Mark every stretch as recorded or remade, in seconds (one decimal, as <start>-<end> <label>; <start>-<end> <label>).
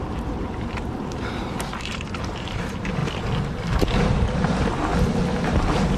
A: 0.0-3.0 remade; 3.0-3.8 recorded; 3.8-4.9 remade; 4.9-5.4 recorded; 5.4-6.0 remade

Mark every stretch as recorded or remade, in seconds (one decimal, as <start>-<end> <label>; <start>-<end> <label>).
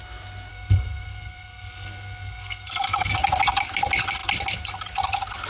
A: 0.0-0.5 recorded; 0.5-3.1 remade; 3.1-5.5 recorded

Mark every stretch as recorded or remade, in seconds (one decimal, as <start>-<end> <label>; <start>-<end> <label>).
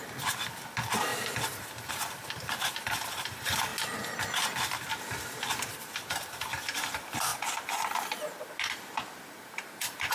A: 0.0-3.7 remade; 3.7-5.7 recorded; 5.7-10.1 remade